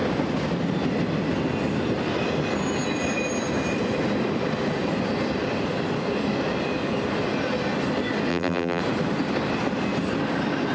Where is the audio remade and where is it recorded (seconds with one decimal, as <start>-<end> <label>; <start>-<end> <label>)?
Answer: 0.0-8.3 recorded; 8.3-8.8 remade; 8.8-10.7 recorded